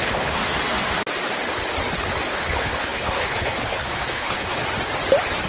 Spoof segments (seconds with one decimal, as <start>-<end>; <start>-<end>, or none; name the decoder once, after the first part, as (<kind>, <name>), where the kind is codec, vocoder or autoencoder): 0.0-0.4 (codec, HILCodec); 2.3-4.6